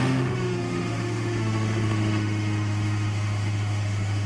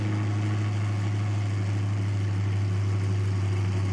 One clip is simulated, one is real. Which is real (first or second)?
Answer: second